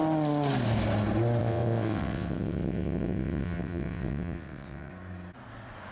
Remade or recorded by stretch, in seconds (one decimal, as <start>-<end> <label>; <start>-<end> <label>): 0.0-1.4 recorded; 1.4-4.9 remade; 4.9-5.9 recorded